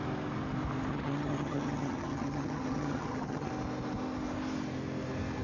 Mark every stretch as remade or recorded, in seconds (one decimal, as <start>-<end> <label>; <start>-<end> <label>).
0.0-0.9 recorded; 0.9-3.5 remade; 3.5-5.4 recorded